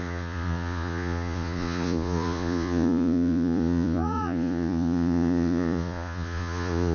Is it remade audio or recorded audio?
remade